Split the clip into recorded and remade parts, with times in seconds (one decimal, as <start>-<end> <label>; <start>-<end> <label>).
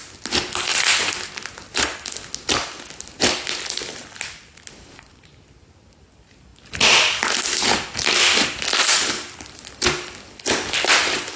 0.0-11.4 recorded